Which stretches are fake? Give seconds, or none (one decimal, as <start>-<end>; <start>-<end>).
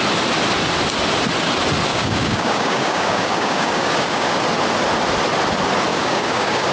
1.9-4.4; 5.9-6.7